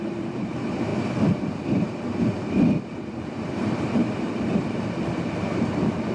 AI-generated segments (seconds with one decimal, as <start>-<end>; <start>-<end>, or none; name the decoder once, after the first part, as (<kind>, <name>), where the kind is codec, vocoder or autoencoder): 0.0-0.9 (vocoder, BigVGAN v2); 2.8-6.1